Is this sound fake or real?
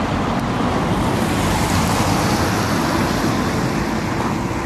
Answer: real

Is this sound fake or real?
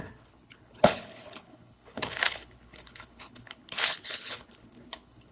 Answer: fake